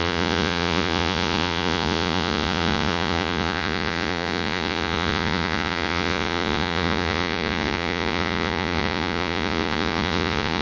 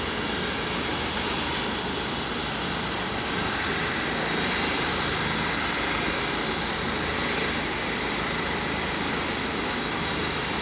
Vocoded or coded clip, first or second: first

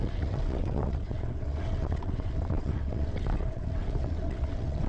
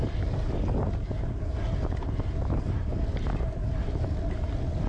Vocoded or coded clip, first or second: first